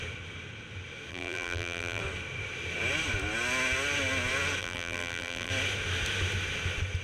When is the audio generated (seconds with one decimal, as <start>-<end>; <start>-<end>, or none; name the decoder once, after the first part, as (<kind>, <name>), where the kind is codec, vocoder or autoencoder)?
1.1-2.0 (vocoder, BigVGAN v2); 4.6-5.5